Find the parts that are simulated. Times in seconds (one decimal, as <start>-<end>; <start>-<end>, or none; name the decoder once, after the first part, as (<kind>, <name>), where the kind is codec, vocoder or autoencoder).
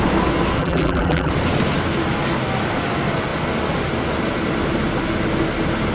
0.6-1.3 (vocoder, BigVGAN v2)